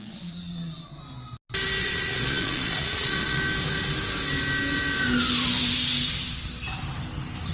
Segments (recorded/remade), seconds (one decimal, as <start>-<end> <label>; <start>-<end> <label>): 0.0-0.9 remade; 0.9-1.8 recorded; 1.8-3.4 remade; 3.4-7.5 recorded